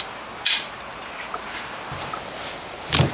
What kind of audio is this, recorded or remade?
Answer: recorded